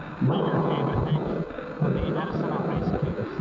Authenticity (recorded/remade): recorded